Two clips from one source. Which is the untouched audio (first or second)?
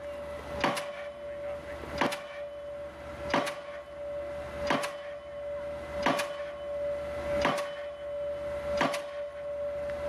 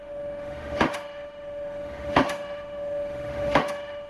first